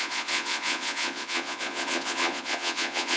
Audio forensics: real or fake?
fake